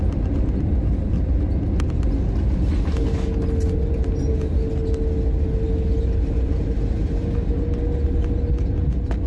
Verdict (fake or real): real